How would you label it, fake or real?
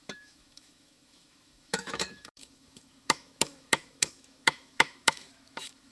fake